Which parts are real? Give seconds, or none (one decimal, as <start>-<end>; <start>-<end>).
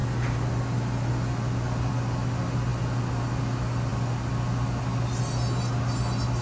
0.0-6.4